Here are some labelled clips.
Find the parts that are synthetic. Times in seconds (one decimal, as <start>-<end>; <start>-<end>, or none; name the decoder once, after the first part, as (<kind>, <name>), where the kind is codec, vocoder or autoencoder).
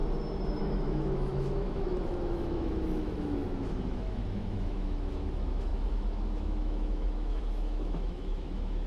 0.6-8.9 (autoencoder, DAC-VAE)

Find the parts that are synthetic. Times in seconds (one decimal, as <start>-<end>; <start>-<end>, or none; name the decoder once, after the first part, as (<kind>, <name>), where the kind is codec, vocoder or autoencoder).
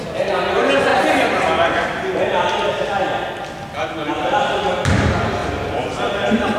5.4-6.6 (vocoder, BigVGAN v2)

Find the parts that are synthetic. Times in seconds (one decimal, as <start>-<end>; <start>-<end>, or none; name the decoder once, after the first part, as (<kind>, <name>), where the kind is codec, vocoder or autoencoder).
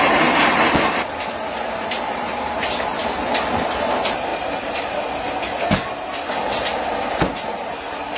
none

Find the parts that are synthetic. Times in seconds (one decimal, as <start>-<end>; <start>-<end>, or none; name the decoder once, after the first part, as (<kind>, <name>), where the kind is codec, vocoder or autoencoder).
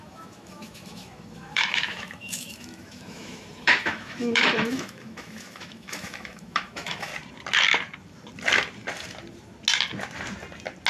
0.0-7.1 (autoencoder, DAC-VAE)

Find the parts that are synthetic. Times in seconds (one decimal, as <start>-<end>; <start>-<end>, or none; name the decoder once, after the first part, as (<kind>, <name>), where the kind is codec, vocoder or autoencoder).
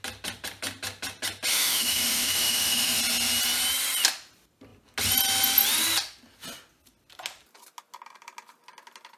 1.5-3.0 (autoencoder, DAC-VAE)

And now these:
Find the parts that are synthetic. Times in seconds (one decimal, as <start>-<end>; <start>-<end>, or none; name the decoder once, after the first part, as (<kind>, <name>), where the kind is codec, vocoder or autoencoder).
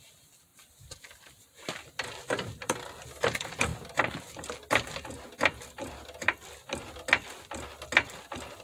none